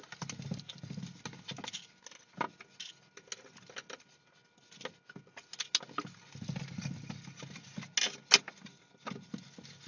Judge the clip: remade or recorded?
recorded